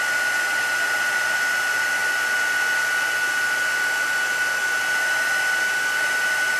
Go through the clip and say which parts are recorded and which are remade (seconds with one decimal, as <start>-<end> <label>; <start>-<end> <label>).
0.0-6.6 recorded